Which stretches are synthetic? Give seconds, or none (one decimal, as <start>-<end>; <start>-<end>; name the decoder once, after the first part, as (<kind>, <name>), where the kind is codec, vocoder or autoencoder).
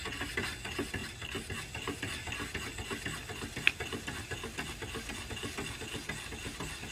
none